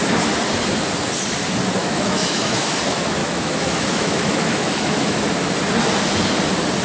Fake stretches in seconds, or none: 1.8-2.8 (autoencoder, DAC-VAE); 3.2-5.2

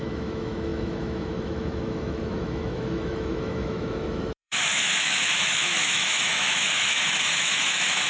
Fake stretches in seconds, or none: 0.0-8.1 (autoencoder, DAC-VAE)

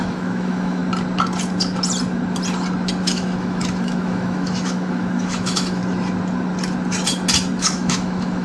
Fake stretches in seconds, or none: 0.0-0.8 (autoencoder, DAC-VAE); 3.0-5.8; 7.5-8.4

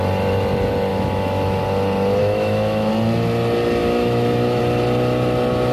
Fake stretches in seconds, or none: 0.9-1.6 (autoencoder, DAC-VAE); 2.2-2.9; 3.8-4.6

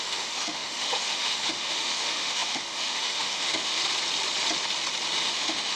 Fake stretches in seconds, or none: 0.0-3.8 (autoencoder, DAC-VAE); 5.2-5.8

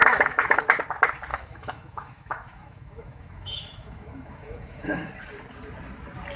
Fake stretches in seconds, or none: 0.0-0.6 (autoencoder, DAC-VAE); 1.3-5.1